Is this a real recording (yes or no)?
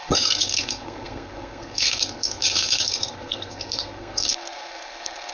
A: no